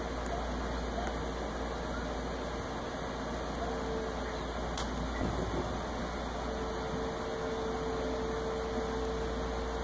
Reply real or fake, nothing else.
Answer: real